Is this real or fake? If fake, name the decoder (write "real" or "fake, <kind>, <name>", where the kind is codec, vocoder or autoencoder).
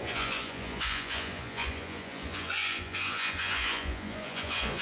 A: fake, vocoder, Vocos